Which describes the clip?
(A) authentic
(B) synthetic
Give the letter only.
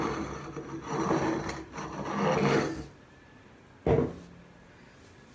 A